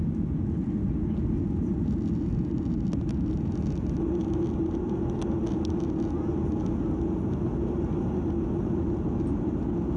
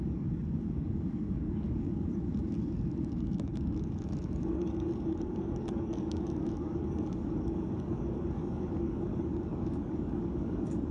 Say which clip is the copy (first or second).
second